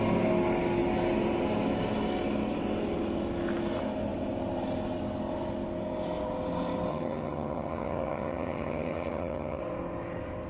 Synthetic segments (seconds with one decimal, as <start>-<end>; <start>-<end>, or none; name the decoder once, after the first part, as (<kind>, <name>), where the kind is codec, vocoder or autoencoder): 6.9-9.6 (vocoder, HiFi-GAN)